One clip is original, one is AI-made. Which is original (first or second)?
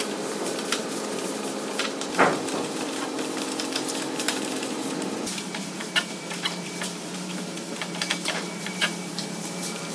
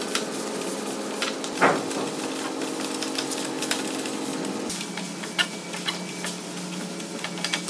second